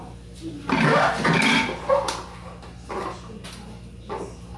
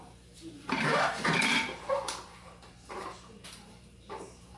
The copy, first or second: second